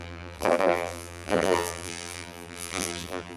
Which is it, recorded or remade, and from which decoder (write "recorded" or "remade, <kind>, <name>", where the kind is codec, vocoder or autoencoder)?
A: remade, vocoder, BigVGAN v2